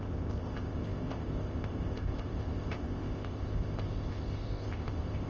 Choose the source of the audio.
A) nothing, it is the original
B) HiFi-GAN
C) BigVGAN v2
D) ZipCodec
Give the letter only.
D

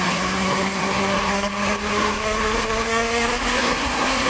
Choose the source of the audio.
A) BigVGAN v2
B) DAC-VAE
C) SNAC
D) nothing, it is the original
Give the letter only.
C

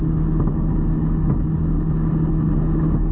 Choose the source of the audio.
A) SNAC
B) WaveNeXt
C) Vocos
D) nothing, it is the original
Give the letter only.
D